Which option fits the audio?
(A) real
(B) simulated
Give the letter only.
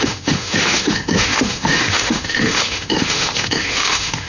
B